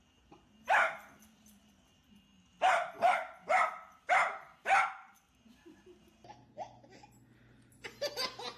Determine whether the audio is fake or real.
real